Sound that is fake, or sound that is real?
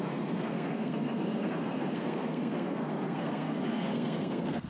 fake